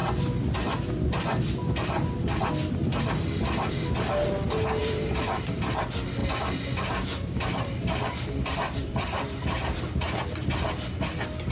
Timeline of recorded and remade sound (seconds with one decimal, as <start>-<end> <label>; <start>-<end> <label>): 0.0-4.8 recorded; 4.8-5.4 remade; 5.4-6.2 recorded; 6.2-9.8 remade; 9.8-11.5 recorded